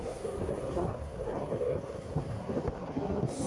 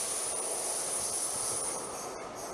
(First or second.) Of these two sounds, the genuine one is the second